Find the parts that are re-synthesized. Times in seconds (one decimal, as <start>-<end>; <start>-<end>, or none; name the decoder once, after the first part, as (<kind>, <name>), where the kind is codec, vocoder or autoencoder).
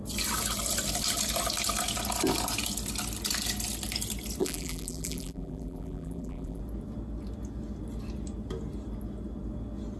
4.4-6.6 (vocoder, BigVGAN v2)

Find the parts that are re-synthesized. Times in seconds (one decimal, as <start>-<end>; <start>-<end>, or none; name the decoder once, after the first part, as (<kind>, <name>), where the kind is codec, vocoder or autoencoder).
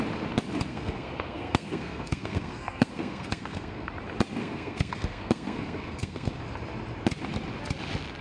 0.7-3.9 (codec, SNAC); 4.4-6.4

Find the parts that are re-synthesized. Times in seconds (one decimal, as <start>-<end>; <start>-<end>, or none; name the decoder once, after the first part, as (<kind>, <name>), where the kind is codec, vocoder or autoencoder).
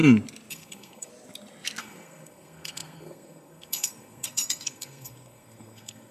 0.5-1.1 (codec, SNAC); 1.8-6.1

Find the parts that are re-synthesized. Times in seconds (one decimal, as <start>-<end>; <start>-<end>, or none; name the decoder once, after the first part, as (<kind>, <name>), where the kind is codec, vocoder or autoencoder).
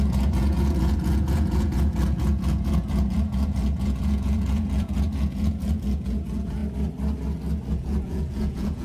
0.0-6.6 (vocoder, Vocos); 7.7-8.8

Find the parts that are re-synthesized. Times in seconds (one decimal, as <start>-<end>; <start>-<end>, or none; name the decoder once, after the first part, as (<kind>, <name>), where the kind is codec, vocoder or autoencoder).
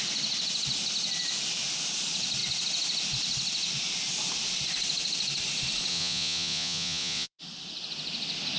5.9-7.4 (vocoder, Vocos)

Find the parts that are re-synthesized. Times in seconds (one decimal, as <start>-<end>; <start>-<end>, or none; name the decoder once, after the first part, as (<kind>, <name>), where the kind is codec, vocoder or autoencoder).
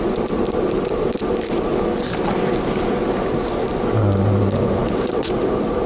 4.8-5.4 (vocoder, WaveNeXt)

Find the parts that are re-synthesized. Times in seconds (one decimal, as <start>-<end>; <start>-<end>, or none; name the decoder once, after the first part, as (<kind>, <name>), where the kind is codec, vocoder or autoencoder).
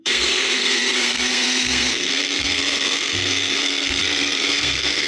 0.0-5.1 (codec, SNAC)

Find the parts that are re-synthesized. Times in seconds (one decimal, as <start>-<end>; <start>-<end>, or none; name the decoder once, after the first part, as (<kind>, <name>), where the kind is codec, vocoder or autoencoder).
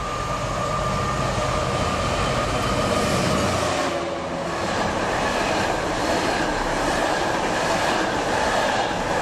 none